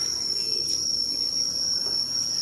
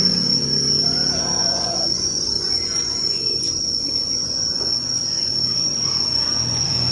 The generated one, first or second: second